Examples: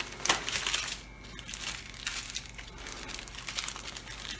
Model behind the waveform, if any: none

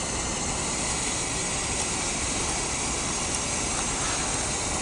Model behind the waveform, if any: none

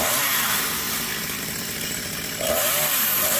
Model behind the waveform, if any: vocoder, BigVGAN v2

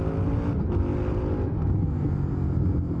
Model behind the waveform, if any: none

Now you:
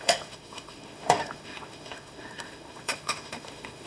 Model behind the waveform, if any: autoencoder, DAC-VAE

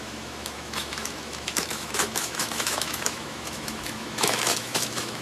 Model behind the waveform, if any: autoencoder, DAC-VAE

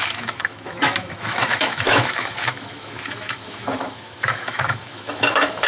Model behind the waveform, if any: autoencoder, DAC-VAE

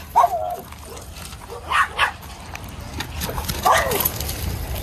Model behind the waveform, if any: none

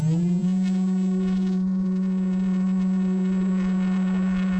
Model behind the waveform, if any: vocoder, Vocos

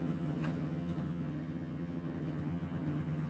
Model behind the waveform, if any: vocoder, HiFi-GAN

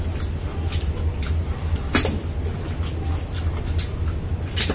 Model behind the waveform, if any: none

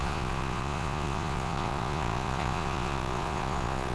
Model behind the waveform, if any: vocoder, Vocos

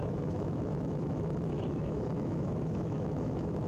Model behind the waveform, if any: autoencoder, DAC-VAE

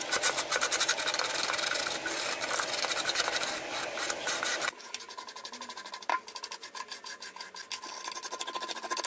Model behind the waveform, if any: none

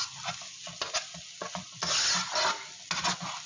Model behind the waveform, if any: none